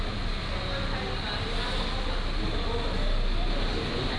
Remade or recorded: recorded